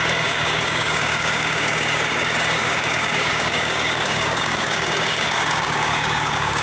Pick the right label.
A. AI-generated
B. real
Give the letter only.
A